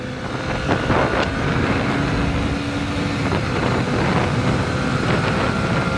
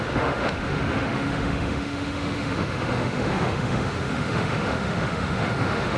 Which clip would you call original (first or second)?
first